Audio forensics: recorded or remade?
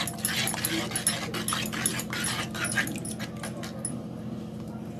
recorded